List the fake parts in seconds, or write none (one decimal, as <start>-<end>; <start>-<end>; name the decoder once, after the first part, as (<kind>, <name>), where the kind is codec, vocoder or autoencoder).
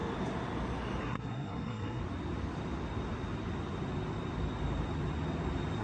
1.0-2.0 (codec, SNAC)